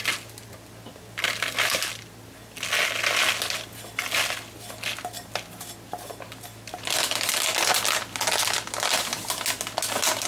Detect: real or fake real